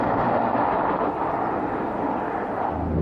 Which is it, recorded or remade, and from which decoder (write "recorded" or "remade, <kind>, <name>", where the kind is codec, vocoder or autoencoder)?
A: recorded